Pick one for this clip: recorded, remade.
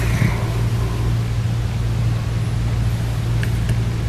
recorded